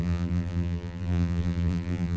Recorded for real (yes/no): no